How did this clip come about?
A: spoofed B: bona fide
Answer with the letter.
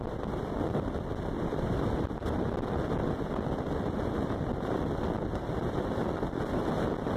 B